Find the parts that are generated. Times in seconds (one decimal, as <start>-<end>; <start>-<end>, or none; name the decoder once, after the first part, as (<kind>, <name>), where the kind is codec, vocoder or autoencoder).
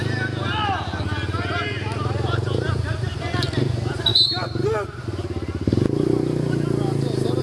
none